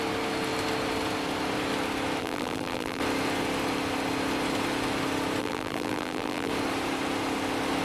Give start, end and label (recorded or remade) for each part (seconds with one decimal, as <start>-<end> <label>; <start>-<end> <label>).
0.0-2.2 recorded; 2.2-3.0 remade; 3.0-5.4 recorded; 5.4-6.5 remade; 6.5-7.8 recorded